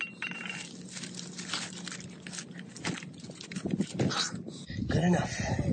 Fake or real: real